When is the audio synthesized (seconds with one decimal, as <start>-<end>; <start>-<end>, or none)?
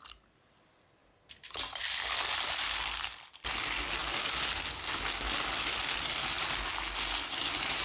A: none